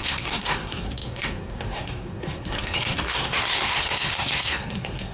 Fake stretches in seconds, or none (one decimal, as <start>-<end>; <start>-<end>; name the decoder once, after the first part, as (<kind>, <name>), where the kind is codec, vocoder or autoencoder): 0.0-5.1 (codec, SNAC)